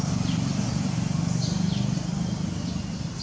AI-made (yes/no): no